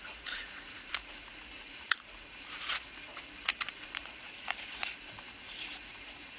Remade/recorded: remade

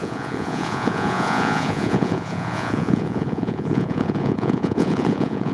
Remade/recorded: remade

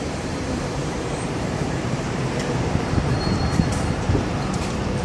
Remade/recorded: remade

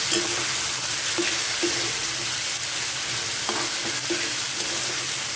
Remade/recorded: recorded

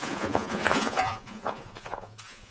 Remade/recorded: remade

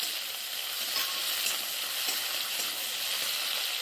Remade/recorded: recorded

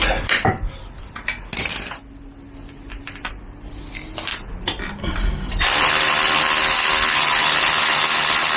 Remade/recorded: recorded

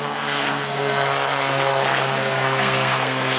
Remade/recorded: remade